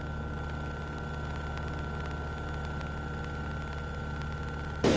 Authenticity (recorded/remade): recorded